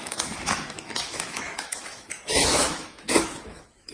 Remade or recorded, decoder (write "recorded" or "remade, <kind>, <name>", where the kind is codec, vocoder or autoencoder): remade, autoencoder, DAC-VAE